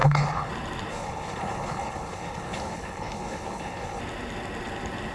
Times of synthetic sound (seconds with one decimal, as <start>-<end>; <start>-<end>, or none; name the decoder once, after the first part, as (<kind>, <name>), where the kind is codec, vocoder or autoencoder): 0.0-0.5 (codec, HILCodec); 0.9-4.0